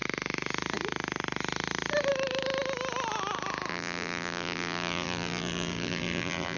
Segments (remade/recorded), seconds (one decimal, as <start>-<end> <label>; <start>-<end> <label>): 0.0-3.7 recorded; 3.7-6.6 remade